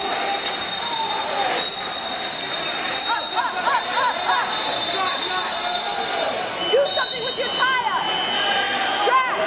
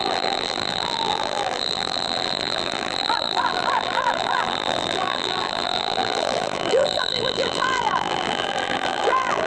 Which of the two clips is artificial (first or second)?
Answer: second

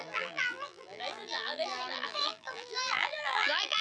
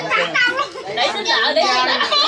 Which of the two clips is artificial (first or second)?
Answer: first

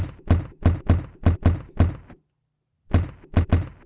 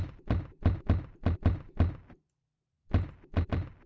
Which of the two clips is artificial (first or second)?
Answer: second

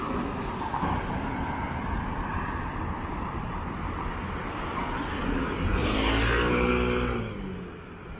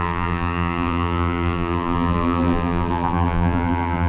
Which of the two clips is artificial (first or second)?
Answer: second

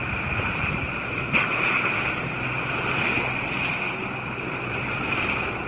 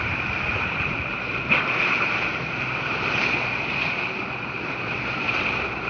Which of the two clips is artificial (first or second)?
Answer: second